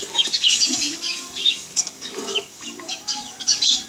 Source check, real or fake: fake